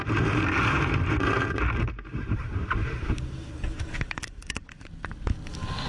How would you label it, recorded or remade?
remade